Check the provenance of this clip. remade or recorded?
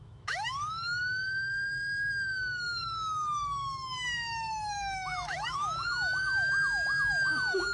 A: remade